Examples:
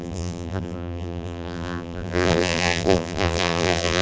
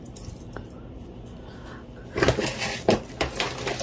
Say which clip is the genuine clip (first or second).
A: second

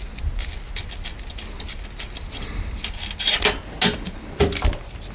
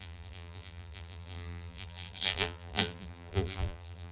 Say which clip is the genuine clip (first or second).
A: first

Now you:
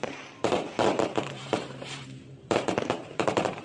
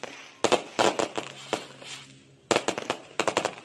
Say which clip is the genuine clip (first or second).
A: second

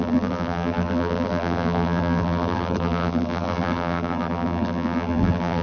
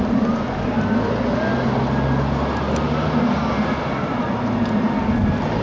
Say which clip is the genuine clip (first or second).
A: second